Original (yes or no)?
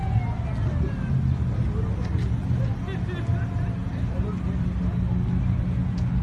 yes